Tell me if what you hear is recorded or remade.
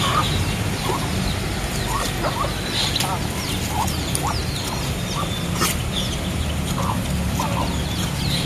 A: recorded